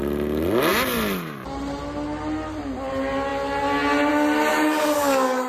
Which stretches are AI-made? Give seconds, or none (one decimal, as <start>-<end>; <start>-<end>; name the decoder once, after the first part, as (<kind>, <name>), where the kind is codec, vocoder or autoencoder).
4.5-5.5 (codec, DAC)